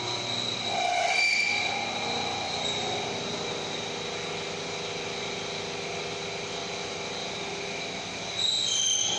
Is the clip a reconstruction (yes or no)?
no